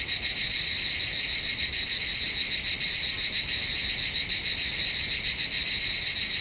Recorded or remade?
recorded